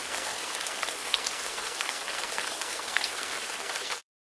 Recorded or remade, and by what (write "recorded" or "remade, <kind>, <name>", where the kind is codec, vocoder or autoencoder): remade, codec, SNAC